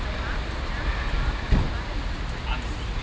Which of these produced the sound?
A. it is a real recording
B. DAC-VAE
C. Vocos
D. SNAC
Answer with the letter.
A